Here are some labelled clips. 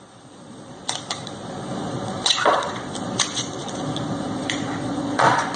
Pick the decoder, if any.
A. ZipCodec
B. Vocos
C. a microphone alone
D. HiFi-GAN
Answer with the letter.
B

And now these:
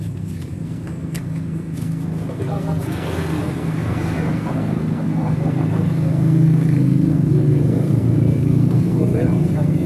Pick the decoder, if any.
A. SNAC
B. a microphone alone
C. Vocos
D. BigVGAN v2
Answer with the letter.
A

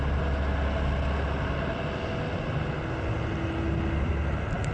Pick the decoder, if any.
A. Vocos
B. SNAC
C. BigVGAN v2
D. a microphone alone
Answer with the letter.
D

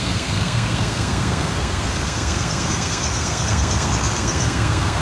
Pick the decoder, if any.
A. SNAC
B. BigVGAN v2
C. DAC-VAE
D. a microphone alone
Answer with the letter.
A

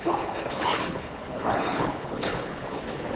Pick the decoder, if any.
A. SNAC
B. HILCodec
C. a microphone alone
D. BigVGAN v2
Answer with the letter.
B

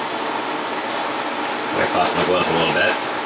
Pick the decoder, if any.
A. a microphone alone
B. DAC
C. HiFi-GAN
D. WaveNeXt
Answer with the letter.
A